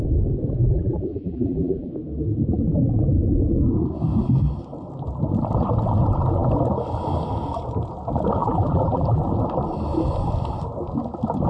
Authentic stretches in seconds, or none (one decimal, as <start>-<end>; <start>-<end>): 0.0-0.7; 1.9-8.4; 9.2-11.5